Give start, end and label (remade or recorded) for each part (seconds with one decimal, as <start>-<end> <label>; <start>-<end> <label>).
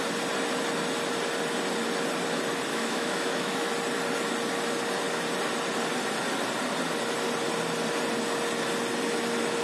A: 0.0-2.7 recorded; 2.7-3.7 remade; 3.7-9.6 recorded